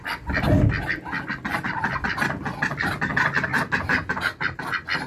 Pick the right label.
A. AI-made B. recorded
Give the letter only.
B